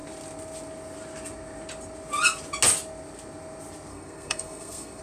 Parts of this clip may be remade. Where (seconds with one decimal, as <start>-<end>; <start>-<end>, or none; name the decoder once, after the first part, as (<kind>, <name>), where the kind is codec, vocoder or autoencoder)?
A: 3.9-5.0 (codec, SNAC)